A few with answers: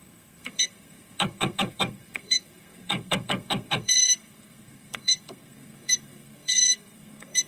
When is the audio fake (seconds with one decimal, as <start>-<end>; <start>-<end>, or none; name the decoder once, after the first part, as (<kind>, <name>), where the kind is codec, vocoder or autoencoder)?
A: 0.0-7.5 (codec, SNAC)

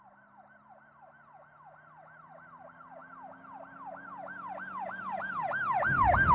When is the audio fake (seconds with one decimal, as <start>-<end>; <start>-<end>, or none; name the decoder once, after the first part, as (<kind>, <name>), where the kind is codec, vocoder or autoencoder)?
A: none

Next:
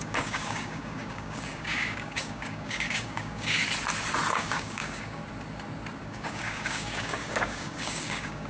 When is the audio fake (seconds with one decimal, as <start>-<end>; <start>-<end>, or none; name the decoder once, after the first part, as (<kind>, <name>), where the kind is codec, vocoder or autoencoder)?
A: 0.0-3.6 (codec, DAC); 4.3-5.2; 6.0-8.5

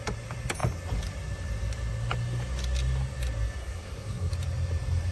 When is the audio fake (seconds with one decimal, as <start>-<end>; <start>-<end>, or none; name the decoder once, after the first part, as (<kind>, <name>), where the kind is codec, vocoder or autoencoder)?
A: 3.6-4.3 (codec, SNAC)

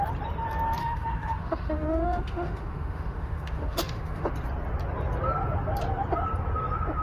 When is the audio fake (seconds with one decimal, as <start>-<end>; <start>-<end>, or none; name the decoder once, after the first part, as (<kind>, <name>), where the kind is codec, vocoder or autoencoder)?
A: 0.8-4.3 (autoencoder, DAC-VAE)

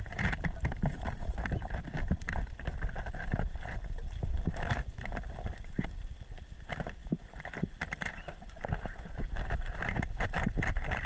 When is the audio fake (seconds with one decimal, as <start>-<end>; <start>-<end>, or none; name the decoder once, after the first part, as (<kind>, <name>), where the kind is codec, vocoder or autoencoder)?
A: 0.0-11.1 (vocoder, BigVGAN v2)

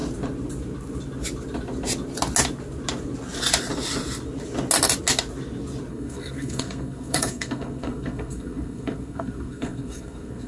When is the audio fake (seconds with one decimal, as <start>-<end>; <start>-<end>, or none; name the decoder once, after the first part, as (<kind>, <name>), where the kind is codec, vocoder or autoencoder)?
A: 5.9-10.5 (codec, SNAC)